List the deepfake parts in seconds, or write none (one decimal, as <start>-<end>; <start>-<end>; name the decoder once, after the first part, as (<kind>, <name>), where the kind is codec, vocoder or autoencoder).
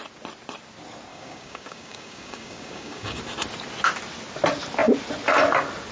1.1-3.2 (codec, DAC)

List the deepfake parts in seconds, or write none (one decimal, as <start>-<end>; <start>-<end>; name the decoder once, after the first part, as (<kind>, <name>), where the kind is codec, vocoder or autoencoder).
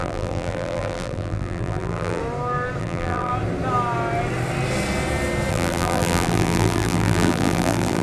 0.0-2.2 (vocoder, BigVGAN v2); 2.8-3.3; 5.5-8.0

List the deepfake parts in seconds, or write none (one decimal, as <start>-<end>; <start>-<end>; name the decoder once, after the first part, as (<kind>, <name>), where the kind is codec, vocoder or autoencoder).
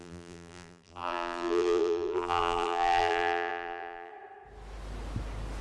0.0-4.1 (vocoder, BigVGAN v2)